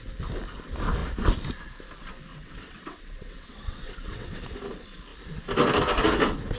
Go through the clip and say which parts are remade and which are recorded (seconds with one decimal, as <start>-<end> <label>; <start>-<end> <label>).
0.0-2.3 recorded; 2.3-4.5 remade; 4.5-6.6 recorded